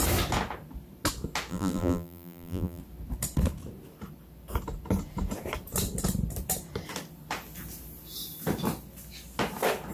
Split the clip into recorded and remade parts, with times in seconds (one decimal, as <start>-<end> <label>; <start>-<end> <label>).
0.0-1.5 recorded; 1.5-2.8 remade; 2.8-9.9 recorded